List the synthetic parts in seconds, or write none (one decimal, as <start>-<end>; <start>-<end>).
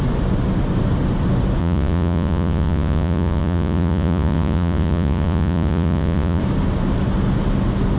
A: 1.6-6.4